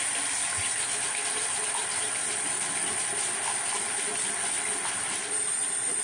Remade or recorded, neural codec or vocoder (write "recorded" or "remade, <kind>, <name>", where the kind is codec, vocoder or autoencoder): recorded